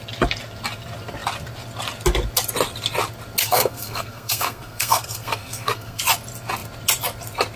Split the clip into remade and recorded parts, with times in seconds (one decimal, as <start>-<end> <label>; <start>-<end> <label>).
0.0-3.4 recorded; 3.4-6.0 remade; 6.0-7.6 recorded

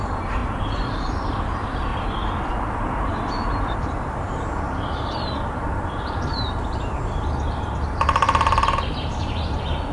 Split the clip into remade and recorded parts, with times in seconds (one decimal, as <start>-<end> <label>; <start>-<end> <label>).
0.0-1.9 remade; 1.9-2.5 recorded; 2.5-9.9 remade

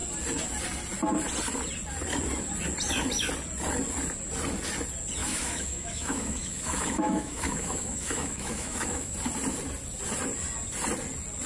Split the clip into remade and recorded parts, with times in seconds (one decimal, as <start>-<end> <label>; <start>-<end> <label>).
0.0-5.2 recorded; 5.2-9.1 remade; 9.1-11.5 recorded

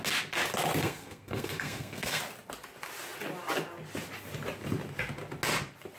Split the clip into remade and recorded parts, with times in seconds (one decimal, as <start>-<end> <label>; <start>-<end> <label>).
0.0-0.8 recorded; 0.8-2.2 remade; 2.2-6.0 recorded

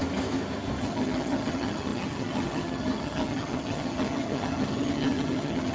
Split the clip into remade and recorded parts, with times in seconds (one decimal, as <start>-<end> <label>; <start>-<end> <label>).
0.0-0.8 recorded; 0.8-5.7 remade

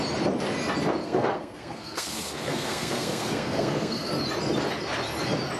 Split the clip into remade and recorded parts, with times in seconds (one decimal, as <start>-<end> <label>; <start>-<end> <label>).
0.0-1.0 recorded; 1.0-4.1 remade; 4.1-5.6 recorded

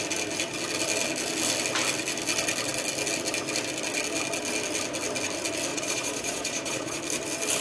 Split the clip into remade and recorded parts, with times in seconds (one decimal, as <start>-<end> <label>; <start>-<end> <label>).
0.0-5.7 recorded; 5.7-7.0 remade; 7.0-7.6 recorded

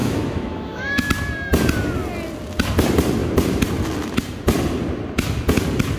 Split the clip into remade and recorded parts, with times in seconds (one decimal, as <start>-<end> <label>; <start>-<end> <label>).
0.0-1.1 remade; 1.1-6.0 recorded